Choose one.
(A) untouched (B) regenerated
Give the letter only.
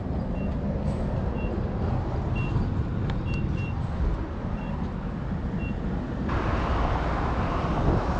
A